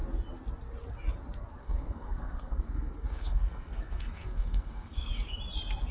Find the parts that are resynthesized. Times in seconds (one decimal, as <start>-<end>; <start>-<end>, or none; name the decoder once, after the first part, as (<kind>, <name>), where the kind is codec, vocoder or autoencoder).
1.6-5.1 (codec, SNAC)